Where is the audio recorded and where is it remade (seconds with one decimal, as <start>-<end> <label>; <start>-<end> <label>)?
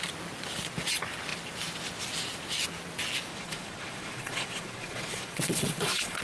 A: 0.0-3.3 recorded; 3.3-6.2 remade